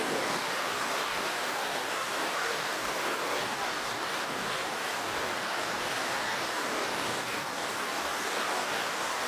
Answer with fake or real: fake